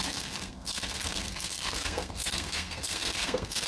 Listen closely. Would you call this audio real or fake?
fake